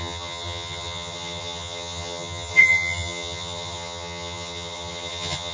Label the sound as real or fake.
fake